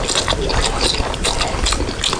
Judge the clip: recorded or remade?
recorded